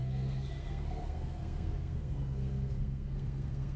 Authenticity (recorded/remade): remade